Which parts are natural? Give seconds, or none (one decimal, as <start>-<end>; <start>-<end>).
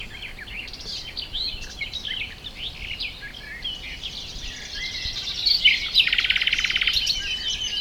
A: 0.0-7.8